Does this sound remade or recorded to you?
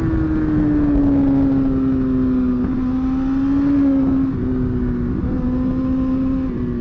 recorded